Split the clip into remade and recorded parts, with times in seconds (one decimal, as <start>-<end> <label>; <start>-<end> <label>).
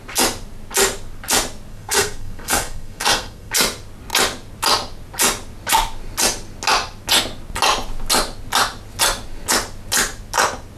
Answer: 0.0-1.7 recorded; 1.7-3.5 remade; 3.5-10.8 recorded